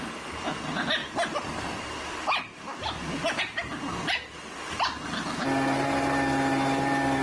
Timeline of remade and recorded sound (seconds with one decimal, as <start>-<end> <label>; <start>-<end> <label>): 0.0-1.0 recorded; 1.0-3.4 remade; 3.4-7.2 recorded